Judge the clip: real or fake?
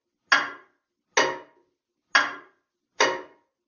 real